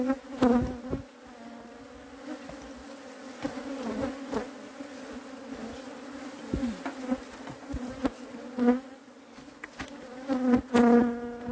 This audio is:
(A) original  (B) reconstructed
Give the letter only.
A